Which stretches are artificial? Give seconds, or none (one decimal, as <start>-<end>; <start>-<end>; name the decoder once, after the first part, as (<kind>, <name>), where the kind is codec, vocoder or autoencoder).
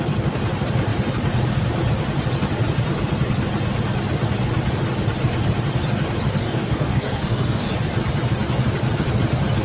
6.4-7.7 (codec, DAC)